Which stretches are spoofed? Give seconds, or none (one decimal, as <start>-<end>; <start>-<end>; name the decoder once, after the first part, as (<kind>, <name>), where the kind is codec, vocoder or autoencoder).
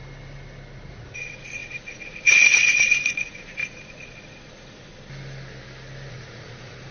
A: 0.9-4.9 (vocoder, Vocos); 6.1-6.9